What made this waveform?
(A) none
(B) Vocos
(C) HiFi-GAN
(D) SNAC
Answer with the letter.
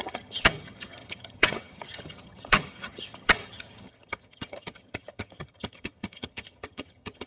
C